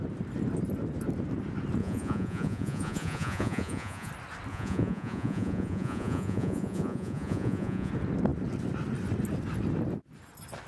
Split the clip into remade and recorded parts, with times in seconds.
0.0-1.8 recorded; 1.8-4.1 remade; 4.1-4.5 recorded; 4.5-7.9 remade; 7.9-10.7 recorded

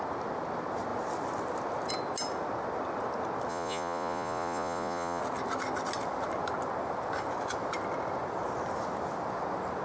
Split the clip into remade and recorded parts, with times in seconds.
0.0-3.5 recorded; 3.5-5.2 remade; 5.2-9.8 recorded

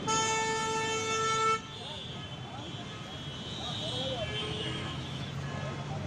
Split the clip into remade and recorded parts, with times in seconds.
0.0-4.4 recorded; 4.4-5.3 remade; 5.3-6.1 recorded

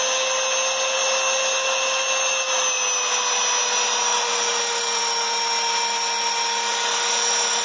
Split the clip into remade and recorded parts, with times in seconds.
0.0-7.6 recorded

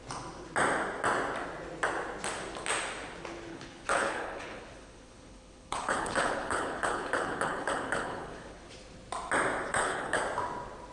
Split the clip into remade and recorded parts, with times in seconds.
0.0-3.5 recorded; 3.5-8.7 remade; 8.7-9.7 recorded; 9.7-10.2 remade; 10.2-10.9 recorded

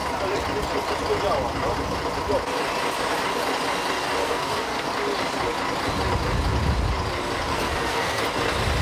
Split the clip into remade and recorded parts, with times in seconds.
0.0-4.2 recorded; 4.2-4.9 remade; 4.9-7.5 recorded; 7.5-8.2 remade; 8.2-8.8 recorded